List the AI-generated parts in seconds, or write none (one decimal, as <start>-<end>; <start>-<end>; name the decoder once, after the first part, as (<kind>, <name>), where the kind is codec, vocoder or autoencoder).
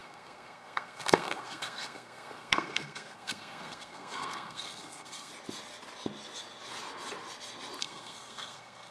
0.0-5.3 (codec, SNAC); 7.8-8.9